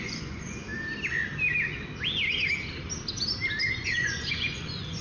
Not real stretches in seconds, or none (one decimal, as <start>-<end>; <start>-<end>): 0.0-0.7; 3.7-5.0